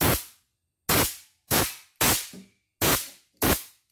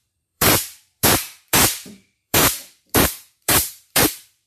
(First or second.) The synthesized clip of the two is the second